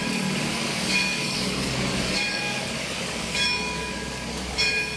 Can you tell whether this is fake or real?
fake